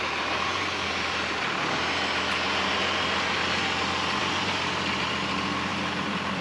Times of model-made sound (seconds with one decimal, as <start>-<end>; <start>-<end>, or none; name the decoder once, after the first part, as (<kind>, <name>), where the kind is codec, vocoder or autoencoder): 4.2-5.1 (vocoder, BigVGAN v2); 5.7-6.4